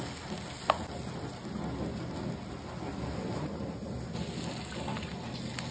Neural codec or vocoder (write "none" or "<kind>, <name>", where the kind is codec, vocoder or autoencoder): none